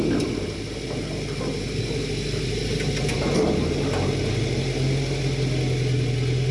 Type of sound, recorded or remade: recorded